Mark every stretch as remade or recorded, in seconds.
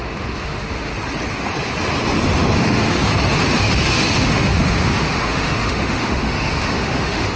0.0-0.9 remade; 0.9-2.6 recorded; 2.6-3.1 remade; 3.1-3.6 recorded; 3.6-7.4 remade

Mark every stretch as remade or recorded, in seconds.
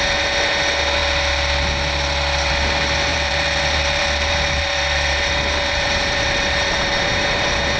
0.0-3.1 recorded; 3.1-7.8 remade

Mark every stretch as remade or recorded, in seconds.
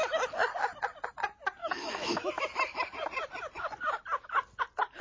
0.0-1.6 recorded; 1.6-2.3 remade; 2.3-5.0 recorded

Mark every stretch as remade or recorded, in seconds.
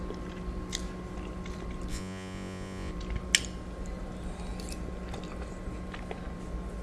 0.0-1.9 recorded; 1.9-2.9 remade; 2.9-6.8 recorded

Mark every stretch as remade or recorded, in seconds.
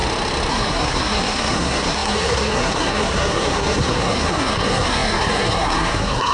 0.0-0.5 recorded; 0.5-6.3 remade